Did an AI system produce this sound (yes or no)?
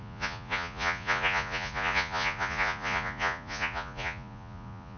yes